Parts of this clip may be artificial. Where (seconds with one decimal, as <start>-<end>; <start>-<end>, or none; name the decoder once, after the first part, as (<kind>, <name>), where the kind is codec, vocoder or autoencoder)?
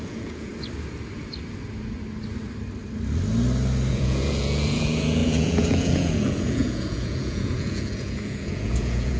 0.0-0.5 (vocoder, Vocos); 3.9-9.2